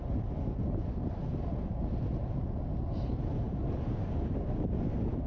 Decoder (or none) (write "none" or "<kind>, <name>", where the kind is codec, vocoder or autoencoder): none